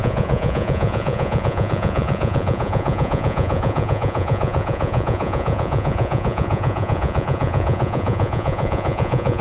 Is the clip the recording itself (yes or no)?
no